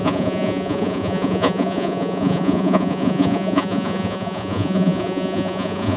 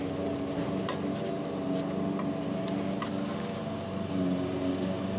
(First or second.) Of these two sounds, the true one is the second